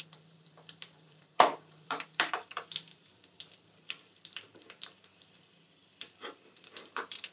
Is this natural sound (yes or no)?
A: no